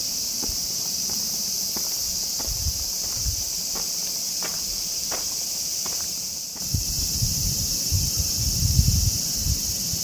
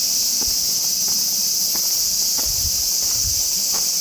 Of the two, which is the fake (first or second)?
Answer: first